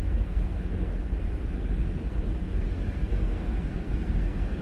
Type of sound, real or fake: fake